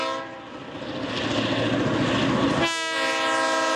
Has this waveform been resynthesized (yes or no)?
no